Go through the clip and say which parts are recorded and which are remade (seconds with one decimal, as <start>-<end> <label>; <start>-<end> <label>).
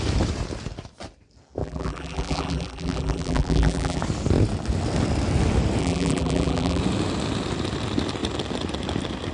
0.0-1.6 recorded; 1.6-4.0 remade; 4.0-5.8 recorded; 5.8-6.8 remade; 6.8-9.3 recorded